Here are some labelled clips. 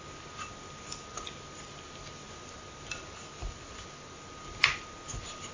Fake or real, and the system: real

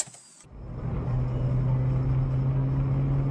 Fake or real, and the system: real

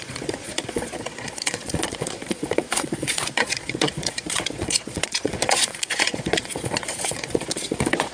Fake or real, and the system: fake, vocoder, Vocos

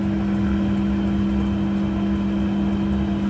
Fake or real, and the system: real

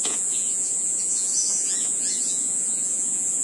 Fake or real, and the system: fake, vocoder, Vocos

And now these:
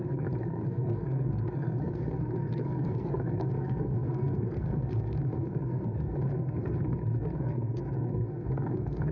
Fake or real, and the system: fake, codec, SNAC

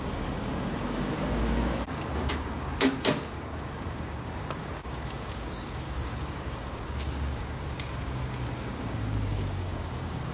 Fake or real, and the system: fake, codec, DAC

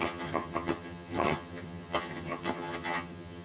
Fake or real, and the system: fake, vocoder, HiFi-GAN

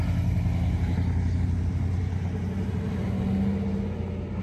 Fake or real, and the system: real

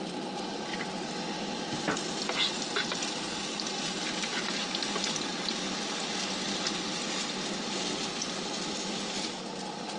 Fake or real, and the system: real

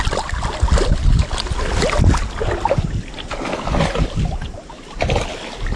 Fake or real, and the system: real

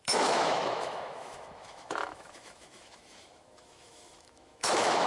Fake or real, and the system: fake, autoencoder, DAC-VAE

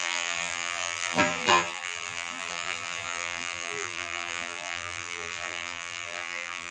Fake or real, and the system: fake, vocoder, BigVGAN v2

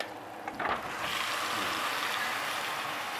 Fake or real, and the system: real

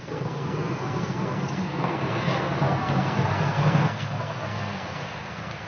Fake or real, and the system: fake, codec, SNAC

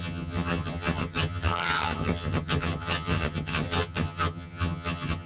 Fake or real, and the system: fake, vocoder, HiFi-GAN